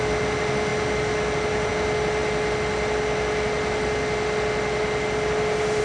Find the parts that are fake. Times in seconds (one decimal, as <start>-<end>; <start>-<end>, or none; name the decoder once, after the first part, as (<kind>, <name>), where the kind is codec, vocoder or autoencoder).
none